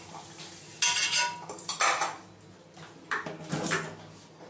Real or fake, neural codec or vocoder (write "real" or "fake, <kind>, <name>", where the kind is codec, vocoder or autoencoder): real